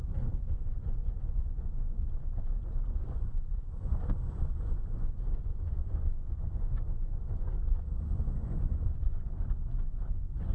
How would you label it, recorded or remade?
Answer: remade